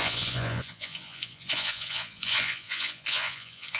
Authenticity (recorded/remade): remade